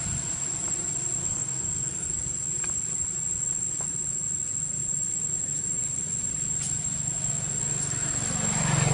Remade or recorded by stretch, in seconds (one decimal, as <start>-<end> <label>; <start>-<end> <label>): 0.0-1.2 recorded; 1.2-2.1 remade; 2.1-8.9 recorded